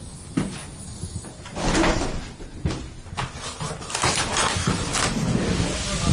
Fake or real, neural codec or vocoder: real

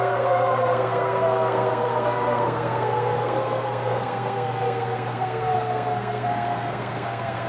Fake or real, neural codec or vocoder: fake, codec, SNAC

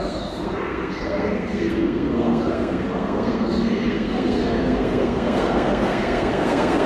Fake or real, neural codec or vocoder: fake, codec, SNAC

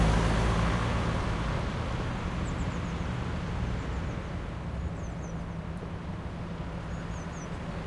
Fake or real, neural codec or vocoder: real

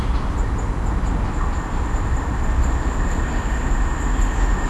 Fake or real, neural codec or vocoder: real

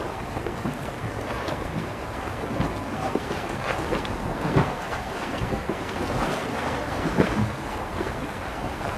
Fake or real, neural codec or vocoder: fake, codec, SNAC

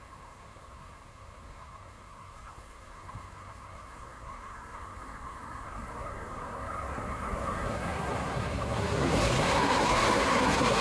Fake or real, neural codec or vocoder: fake, codec, SNAC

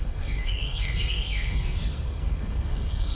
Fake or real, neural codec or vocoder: fake, codec, SNAC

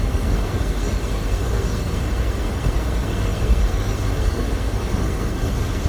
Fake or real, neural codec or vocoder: fake, codec, SNAC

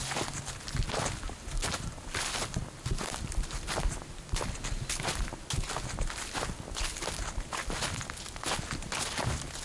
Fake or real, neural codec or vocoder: real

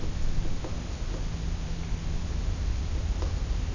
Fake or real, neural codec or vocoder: real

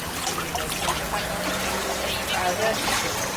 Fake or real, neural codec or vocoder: real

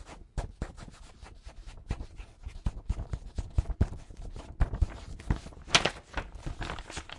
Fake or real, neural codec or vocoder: real